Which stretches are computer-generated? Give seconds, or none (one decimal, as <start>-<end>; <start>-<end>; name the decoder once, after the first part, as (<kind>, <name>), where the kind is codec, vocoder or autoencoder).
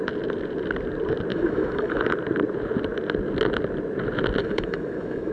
1.3-2.1 (autoencoder, DAC-VAE); 4.4-5.3